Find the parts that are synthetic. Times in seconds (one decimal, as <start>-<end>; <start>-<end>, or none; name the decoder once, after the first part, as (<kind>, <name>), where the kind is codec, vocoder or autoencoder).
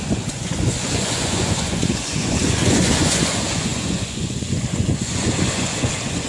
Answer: 0.0-6.3 (vocoder, Vocos)